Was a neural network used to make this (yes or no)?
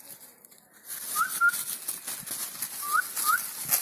no